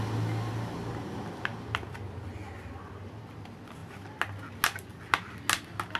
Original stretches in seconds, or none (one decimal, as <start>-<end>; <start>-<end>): 0.0-6.0